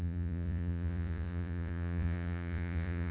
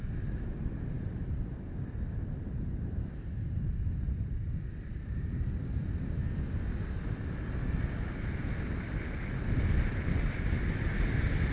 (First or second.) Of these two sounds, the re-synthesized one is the first